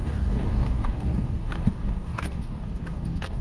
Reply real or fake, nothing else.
fake